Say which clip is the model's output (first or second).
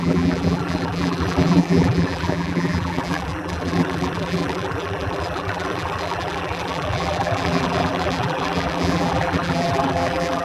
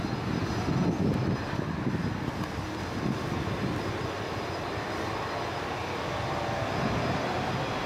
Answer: first